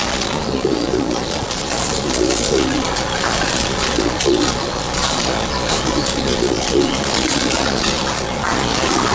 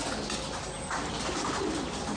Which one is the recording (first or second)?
second